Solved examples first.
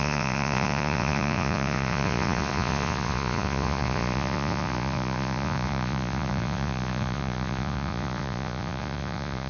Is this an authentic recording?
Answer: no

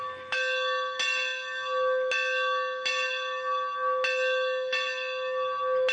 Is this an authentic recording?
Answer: yes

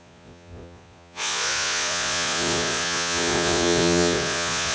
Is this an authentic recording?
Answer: no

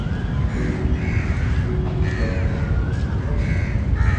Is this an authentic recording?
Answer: yes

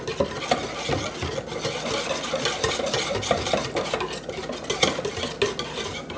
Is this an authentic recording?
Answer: yes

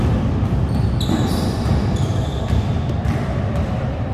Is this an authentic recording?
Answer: yes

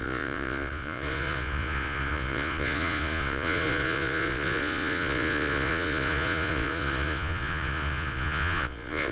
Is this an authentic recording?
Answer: no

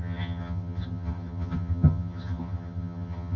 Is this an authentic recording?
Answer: no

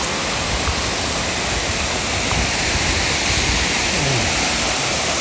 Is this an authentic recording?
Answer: yes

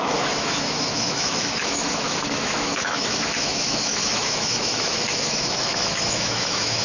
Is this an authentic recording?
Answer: no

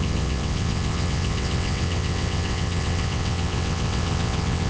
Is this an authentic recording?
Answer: no